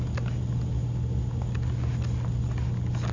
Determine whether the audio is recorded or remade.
recorded